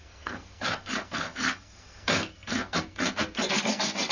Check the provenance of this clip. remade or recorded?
remade